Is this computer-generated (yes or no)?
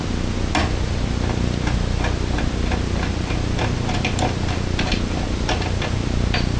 yes